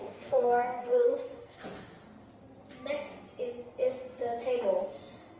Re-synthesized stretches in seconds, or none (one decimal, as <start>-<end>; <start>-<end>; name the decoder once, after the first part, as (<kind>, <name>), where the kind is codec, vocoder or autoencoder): 0.0-1.6 (codec, SNAC); 4.8-5.4